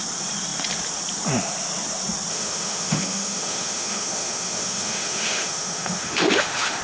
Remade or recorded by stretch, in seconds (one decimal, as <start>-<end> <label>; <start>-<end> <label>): 0.0-2.3 recorded; 2.3-6.8 remade